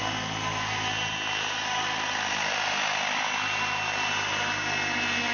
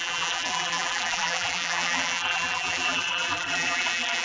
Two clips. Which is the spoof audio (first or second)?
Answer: second